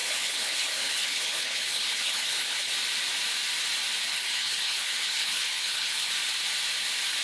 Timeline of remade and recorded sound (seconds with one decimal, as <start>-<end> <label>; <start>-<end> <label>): 0.0-2.7 remade; 2.7-4.1 recorded; 4.1-6.1 remade; 6.1-7.2 recorded